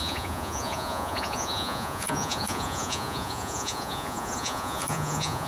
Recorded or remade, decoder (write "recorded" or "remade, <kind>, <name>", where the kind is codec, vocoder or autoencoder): remade, vocoder, Vocos